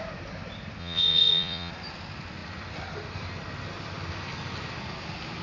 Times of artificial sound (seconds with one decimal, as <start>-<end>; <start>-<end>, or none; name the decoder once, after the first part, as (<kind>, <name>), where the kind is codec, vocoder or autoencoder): 0.8-1.7 (vocoder, Vocos)